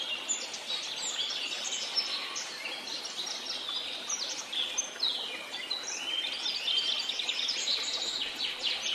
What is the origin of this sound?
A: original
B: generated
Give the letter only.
A